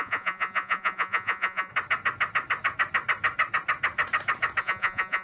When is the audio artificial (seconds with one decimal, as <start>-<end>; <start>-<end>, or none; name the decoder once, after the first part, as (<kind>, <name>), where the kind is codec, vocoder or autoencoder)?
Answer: 0.0-1.7 (vocoder, Vocos); 4.6-5.2